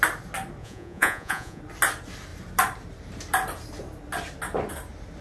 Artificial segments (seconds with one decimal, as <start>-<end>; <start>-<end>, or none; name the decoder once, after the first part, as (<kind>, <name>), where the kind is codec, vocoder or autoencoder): 0.6-1.6 (vocoder, Vocos)